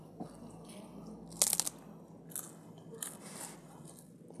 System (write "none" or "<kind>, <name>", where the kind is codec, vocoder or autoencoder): none